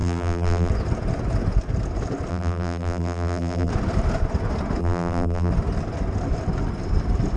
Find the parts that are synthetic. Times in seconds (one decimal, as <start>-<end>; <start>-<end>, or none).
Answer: 0.0-0.7; 2.3-3.7; 4.8-5.5